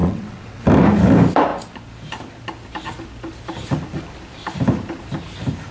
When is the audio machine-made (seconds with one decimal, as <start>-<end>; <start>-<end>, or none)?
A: 0.0-0.6